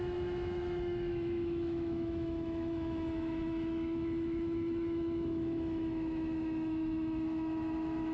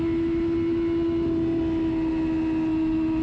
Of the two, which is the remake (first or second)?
first